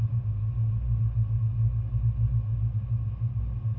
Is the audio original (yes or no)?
yes